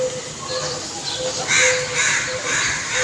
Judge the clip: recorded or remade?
recorded